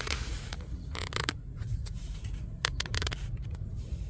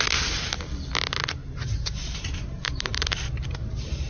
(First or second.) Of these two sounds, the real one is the second